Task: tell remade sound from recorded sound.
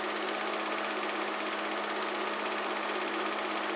recorded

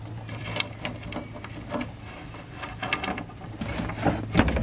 recorded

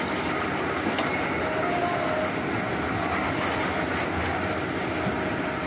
recorded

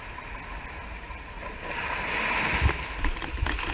recorded